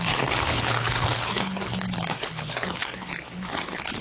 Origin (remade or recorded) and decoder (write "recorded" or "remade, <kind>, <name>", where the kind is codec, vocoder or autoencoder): remade, codec, HILCodec